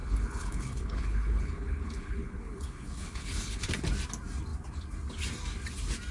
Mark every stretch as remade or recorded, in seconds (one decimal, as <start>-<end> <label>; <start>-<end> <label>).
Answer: 0.0-3.7 remade; 3.7-6.1 recorded